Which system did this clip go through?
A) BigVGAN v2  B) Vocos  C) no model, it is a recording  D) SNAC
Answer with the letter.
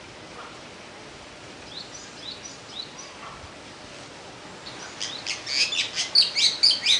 C